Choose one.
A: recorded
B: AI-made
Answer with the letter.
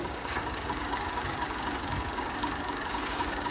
B